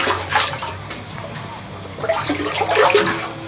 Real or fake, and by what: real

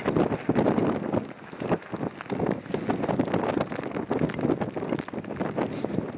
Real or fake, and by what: real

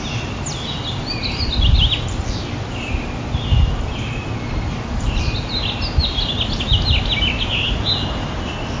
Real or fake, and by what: real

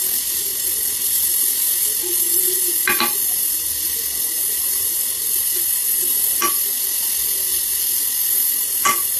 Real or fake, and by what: real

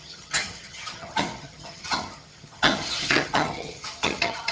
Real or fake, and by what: fake, vocoder, HiFi-GAN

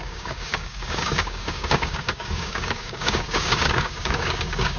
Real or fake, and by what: fake, codec, DAC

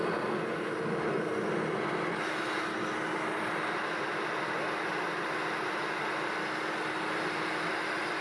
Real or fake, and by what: real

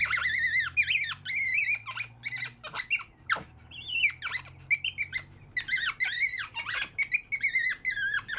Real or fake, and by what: real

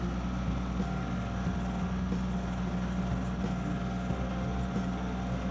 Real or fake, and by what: real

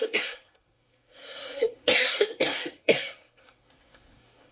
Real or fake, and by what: fake, codec, SNAC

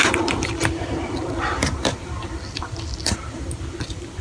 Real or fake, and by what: fake, vocoder, BigVGAN v2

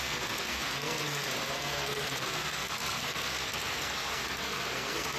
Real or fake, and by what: fake, codec, SNAC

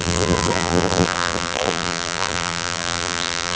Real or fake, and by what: fake, vocoder, BigVGAN v2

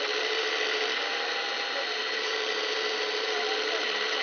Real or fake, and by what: fake, vocoder, BigVGAN v2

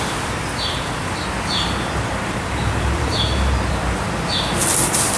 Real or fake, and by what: fake, vocoder, BigVGAN v2